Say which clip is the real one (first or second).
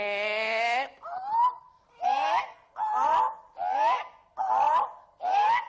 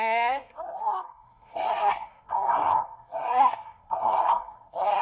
first